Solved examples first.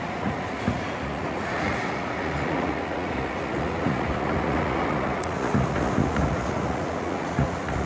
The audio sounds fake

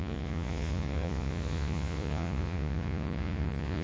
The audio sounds fake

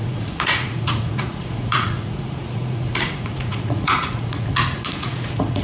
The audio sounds fake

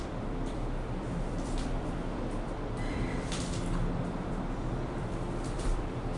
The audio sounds fake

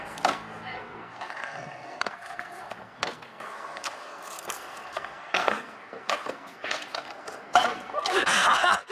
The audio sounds fake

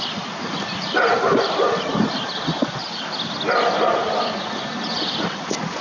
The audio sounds real